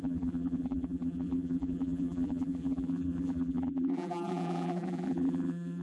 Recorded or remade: remade